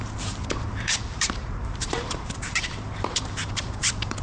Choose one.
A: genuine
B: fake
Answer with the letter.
B